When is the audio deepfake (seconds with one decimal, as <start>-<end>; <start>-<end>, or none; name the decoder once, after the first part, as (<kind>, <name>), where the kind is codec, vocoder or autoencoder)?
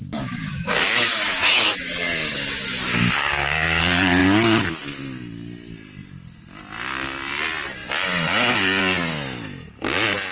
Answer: 0.0-3.8 (codec, DAC)